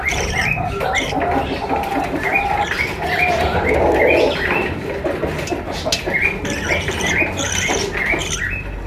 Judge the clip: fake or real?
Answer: real